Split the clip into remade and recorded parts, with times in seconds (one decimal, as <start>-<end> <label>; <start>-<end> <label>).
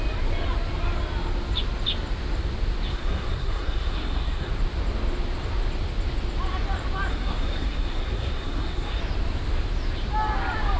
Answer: 0.0-2.9 recorded; 2.9-4.5 remade; 4.5-7.1 recorded; 7.1-9.0 remade; 9.0-10.8 recorded